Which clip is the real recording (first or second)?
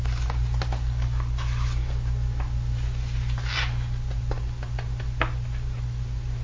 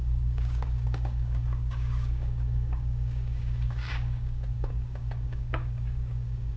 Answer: first